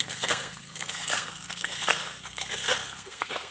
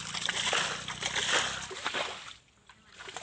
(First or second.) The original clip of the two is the second